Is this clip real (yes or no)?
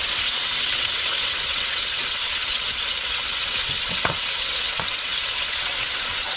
no